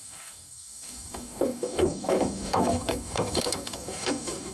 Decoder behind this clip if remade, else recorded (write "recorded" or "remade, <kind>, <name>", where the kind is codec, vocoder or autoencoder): remade, codec, DAC